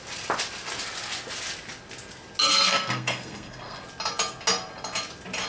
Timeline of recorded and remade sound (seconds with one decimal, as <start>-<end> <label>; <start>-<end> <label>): 0.0-2.5 recorded; 2.5-3.8 remade; 3.8-5.5 recorded